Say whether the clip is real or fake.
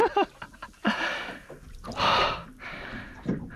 real